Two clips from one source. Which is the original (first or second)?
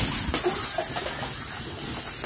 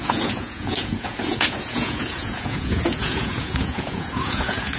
first